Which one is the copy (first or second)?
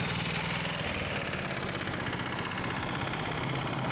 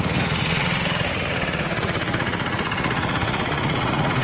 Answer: second